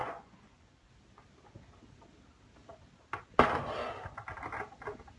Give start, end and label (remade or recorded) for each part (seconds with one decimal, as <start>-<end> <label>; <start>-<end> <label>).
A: 0.0-0.9 remade; 0.9-5.2 recorded